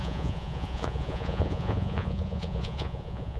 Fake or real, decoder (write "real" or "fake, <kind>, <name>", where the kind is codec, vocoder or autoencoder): fake, vocoder, Vocos